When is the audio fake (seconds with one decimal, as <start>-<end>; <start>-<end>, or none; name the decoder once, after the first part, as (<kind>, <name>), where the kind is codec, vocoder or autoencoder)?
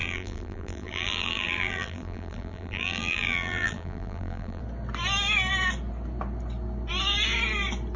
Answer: 0.0-4.6 (vocoder, BigVGAN v2)